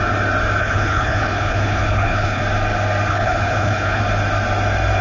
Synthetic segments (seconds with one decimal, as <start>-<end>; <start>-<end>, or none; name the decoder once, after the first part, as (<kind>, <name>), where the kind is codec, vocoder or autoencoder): 0.6-2.4 (codec, HILCodec); 3.1-4.0